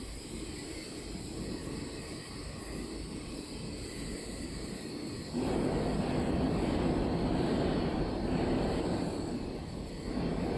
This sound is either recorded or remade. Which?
recorded